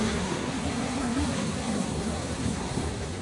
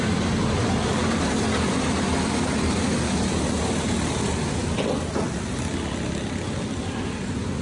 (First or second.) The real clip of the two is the second